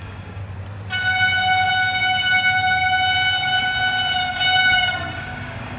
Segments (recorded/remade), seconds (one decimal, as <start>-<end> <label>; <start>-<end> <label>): 0.0-0.4 remade; 0.4-1.7 recorded; 1.7-5.8 remade